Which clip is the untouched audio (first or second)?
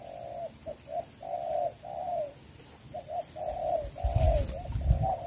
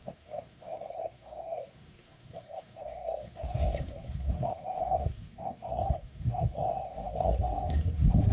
first